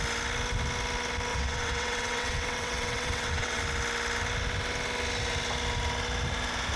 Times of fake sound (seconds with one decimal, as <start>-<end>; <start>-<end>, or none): 1.3-3.6